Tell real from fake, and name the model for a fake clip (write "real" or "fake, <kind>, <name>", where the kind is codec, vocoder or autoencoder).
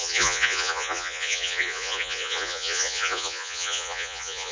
fake, vocoder, Vocos